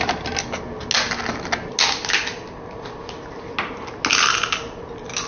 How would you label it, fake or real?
real